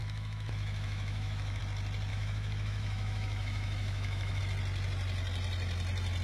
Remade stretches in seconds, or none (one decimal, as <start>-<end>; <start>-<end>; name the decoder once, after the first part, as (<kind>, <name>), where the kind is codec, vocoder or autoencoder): 0.0-1.6 (autoencoder, DAC-VAE); 2.1-4.4